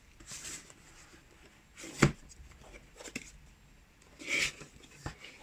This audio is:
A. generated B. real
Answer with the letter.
B